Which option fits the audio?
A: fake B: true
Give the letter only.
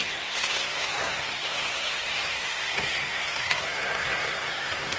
A